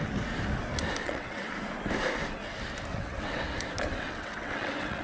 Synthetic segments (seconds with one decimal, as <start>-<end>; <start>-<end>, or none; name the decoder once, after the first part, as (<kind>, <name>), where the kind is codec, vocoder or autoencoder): 1.0-1.5 (vocoder, WaveNeXt); 2.9-3.4; 3.9-5.0